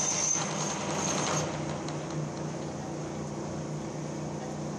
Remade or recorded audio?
recorded